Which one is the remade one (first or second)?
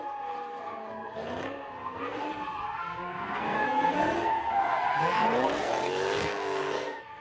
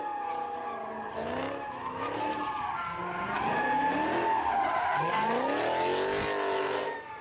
first